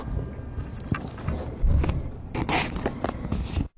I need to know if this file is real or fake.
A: real